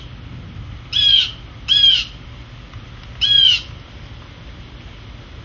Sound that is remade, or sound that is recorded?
recorded